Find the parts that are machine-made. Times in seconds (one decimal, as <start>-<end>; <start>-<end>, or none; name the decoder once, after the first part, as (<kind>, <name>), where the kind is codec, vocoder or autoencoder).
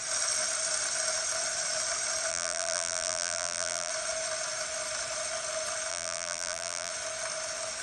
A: 2.3-3.9 (vocoder, BigVGAN v2); 5.9-6.9